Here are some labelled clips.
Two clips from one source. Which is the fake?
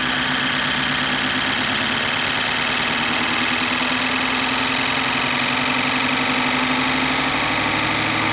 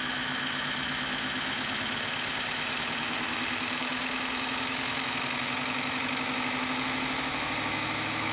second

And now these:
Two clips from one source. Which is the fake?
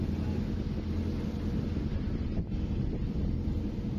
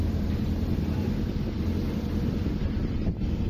second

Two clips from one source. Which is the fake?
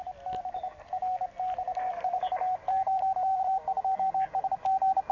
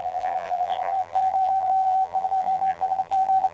second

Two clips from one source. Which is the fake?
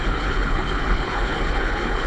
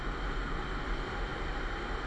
first